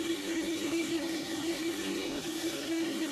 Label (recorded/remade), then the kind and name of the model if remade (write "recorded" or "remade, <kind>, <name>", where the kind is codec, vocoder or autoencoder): remade, codec, SNAC